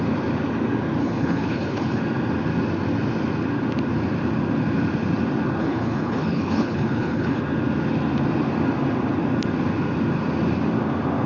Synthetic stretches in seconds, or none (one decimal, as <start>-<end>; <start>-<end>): 1.0-2.0; 5.6-7.4